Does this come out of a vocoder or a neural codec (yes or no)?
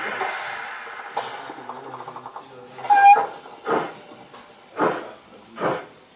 no